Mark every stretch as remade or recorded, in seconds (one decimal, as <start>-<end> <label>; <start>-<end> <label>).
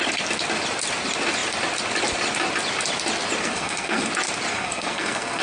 0.0-3.4 recorded; 3.4-4.1 remade; 4.1-4.5 recorded; 4.5-5.4 remade